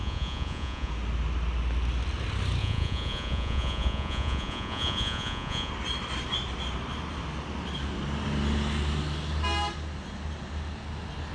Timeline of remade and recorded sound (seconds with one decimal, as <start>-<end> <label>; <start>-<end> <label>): 0.0-0.9 remade; 0.9-2.6 recorded; 2.6-5.7 remade; 5.7-11.3 recorded